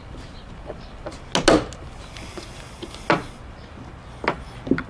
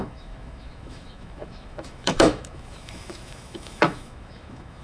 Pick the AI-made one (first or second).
second